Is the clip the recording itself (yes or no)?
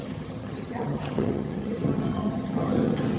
no